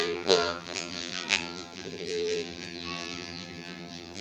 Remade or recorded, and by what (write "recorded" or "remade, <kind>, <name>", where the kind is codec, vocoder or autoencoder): remade, vocoder, BigVGAN v2